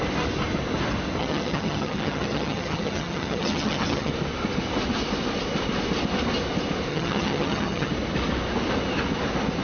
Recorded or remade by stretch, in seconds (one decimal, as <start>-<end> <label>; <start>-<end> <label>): 0.0-1.2 recorded; 1.2-4.1 remade; 4.1-6.9 recorded; 6.9-7.9 remade; 7.9-9.6 recorded